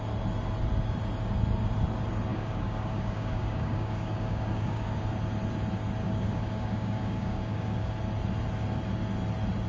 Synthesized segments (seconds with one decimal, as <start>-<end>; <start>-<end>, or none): 2.3-5.0; 6.0-7.9